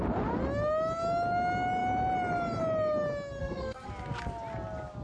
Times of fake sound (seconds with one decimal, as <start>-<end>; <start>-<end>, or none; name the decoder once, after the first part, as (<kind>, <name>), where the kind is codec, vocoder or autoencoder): 3.4-3.9 (codec, SNAC)